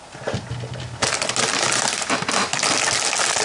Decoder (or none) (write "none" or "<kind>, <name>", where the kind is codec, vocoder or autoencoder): none